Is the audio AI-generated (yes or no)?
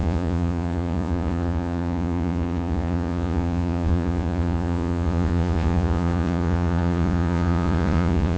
yes